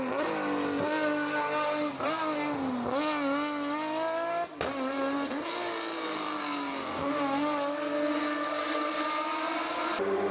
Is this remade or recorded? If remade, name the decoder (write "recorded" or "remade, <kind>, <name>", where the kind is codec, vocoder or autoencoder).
recorded